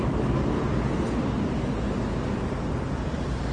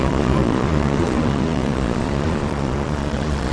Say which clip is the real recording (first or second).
first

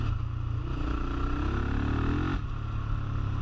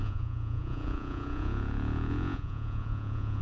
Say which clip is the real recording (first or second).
first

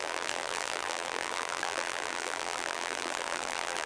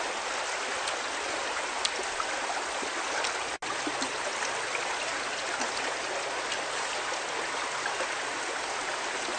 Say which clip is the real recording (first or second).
second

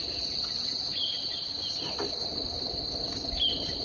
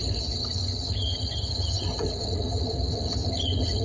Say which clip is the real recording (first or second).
first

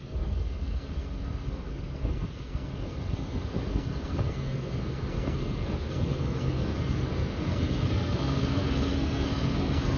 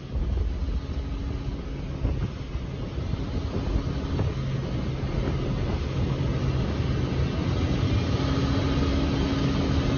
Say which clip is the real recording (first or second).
second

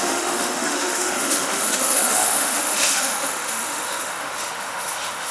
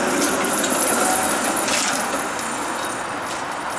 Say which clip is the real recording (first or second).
second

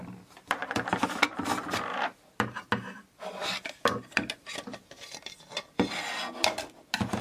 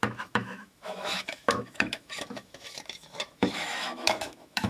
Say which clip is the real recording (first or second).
first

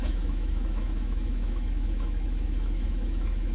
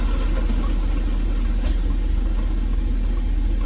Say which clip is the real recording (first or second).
second